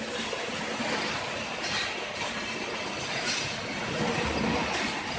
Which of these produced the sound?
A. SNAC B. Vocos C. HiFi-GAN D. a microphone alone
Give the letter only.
D